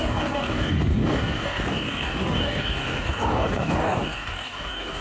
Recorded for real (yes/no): no